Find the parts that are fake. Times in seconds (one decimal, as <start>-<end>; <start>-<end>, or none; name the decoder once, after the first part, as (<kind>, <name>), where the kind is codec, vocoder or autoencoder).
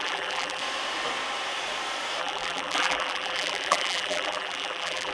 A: 0.0-0.6 (vocoder, BigVGAN v2); 2.2-5.1